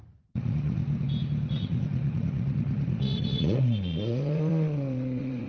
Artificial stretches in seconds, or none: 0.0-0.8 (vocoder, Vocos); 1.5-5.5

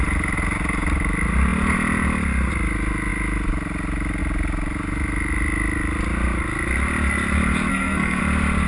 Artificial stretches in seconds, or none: 7.7-8.2 (codec, SNAC)

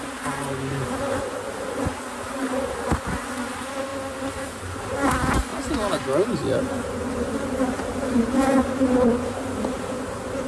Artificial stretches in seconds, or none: 3.9-4.8 (vocoder, BigVGAN v2)

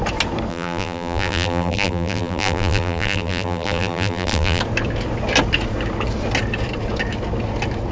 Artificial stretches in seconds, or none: 0.5-4.6 (vocoder, BigVGAN v2)

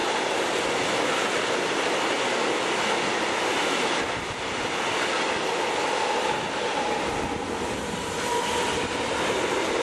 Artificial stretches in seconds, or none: none

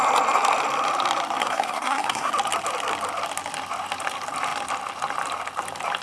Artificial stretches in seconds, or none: 1.4-2.3 (codec, SNAC)